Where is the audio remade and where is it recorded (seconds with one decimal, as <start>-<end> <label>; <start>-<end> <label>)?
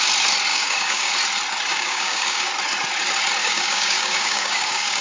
0.0-0.5 recorded; 0.5-1.1 remade; 1.1-1.7 recorded; 1.7-2.5 remade; 2.5-3.4 recorded; 3.4-5.0 remade